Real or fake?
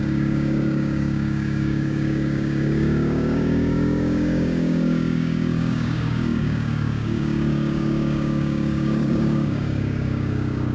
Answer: fake